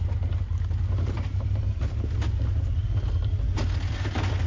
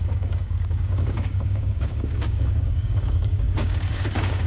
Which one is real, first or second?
first